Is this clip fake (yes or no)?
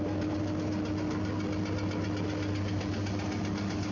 no